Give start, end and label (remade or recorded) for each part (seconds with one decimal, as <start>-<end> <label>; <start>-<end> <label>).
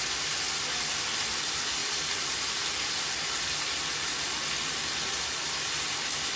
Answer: 0.0-6.4 recorded